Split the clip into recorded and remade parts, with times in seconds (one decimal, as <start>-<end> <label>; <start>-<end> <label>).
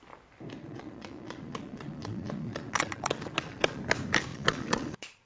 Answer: 0.0-0.6 recorded; 0.6-3.8 remade; 3.8-4.3 recorded; 4.3-5.3 remade